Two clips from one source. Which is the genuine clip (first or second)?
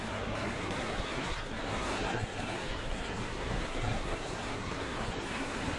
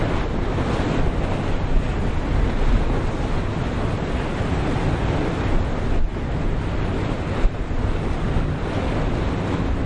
second